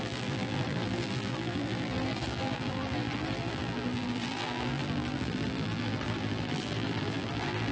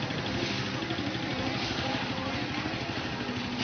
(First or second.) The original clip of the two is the second